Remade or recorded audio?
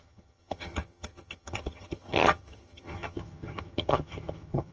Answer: remade